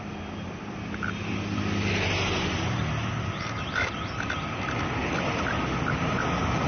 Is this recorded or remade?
recorded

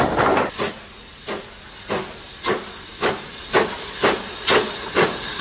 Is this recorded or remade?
recorded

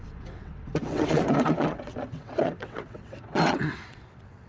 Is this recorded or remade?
remade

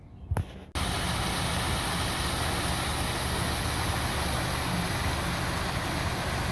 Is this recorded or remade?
recorded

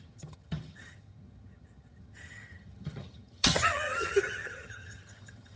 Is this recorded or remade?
remade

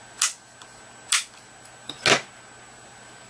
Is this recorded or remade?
recorded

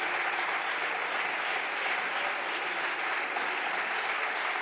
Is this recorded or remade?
recorded